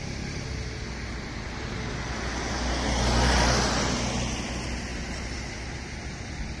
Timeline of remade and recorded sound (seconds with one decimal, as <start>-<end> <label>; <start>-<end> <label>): 0.0-6.6 recorded